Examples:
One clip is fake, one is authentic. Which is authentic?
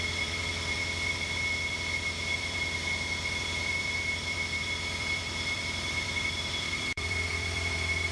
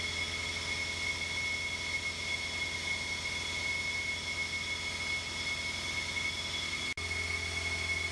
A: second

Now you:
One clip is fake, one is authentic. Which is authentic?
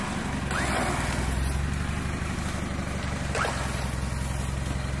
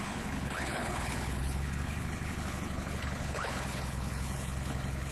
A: first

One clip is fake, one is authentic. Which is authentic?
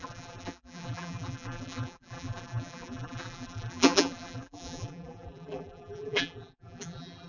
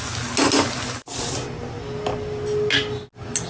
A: second